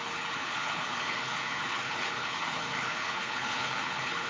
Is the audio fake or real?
fake